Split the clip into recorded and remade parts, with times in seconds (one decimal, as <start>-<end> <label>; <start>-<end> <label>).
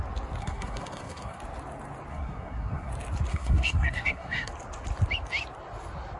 0.0-0.4 recorded; 0.4-1.4 remade; 1.4-2.1 recorded; 2.1-2.9 remade; 2.9-3.3 recorded; 3.3-4.5 remade; 4.5-6.2 recorded